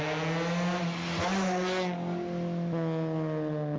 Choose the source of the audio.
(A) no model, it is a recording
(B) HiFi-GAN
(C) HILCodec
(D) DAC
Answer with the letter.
A